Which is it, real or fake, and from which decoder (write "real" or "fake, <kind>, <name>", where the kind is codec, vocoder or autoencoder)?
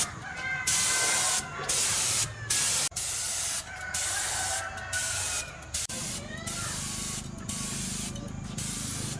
real